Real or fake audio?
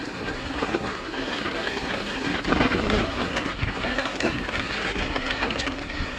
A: fake